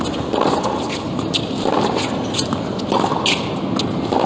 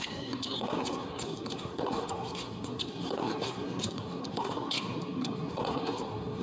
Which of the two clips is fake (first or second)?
second